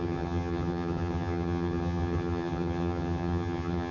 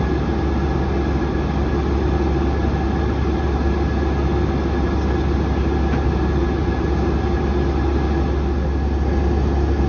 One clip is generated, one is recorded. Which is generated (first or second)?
first